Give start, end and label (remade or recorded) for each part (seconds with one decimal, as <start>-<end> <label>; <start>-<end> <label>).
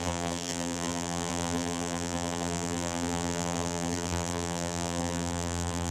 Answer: 0.0-5.9 remade